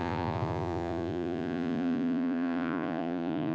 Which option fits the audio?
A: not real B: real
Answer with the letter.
A